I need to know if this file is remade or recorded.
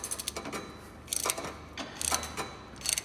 recorded